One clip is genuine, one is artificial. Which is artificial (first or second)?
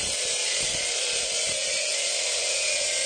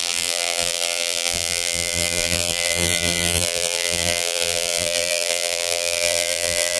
second